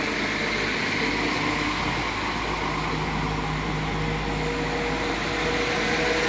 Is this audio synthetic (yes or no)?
no